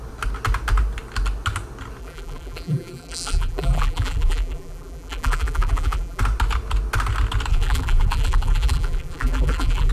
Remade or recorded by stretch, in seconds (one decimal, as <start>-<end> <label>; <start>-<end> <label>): 0.0-2.0 recorded; 2.0-6.2 remade; 6.2-7.5 recorded; 7.5-9.9 remade